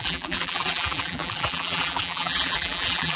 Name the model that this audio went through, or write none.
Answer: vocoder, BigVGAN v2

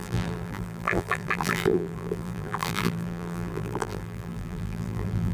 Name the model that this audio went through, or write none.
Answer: vocoder, BigVGAN v2